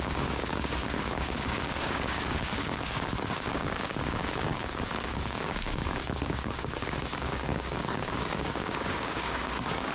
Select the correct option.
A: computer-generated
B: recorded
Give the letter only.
A